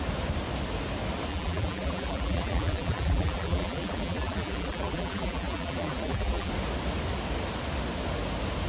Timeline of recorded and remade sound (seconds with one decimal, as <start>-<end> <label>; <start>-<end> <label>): 0.0-1.3 recorded; 1.3-6.5 remade; 6.5-8.7 recorded